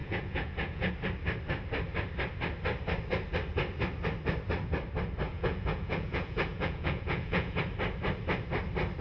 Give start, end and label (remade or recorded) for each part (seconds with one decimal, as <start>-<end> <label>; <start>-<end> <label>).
0.0-0.9 remade; 0.9-5.3 recorded; 5.3-7.6 remade; 7.6-9.0 recorded